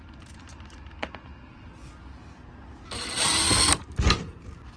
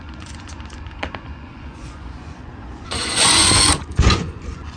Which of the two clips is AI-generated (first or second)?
second